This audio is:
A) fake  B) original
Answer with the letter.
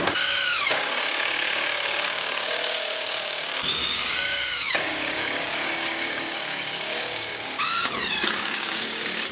A